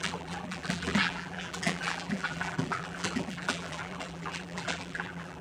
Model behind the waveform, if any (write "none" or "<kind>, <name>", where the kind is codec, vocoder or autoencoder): vocoder, BigVGAN v2